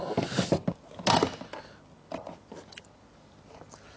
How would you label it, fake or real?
real